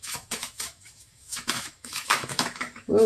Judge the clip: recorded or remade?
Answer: remade